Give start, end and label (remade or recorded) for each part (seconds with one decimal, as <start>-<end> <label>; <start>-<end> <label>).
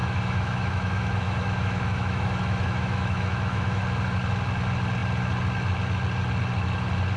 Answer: 0.0-3.8 remade; 3.8-7.2 recorded